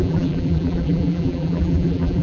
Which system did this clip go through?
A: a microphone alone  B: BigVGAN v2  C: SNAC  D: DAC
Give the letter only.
B